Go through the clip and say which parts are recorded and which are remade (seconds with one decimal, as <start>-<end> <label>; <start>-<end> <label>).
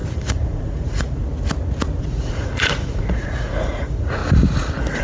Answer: 0.0-1.2 remade; 1.2-2.0 recorded; 2.0-4.2 remade; 4.2-5.0 recorded